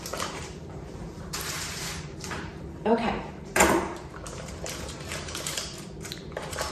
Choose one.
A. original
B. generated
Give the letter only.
B